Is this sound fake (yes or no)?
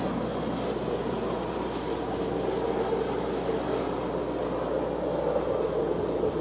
no